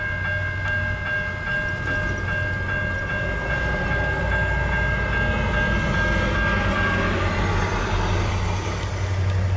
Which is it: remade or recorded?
recorded